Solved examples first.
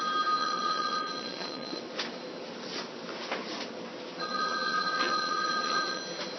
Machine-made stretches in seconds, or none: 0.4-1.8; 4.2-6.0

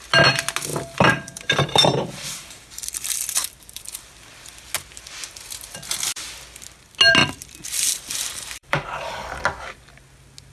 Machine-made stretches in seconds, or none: 0.7-4.3; 7.2-9.4

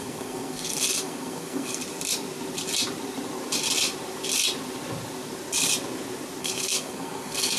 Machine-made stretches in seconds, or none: 0.0-1.8; 6.4-7.6

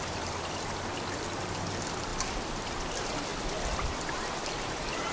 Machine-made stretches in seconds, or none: none